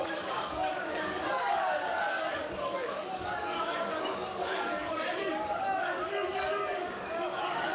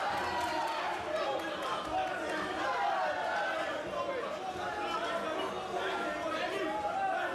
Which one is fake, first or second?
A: first